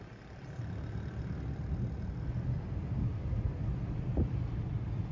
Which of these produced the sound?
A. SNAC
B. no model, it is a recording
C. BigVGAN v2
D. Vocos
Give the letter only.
B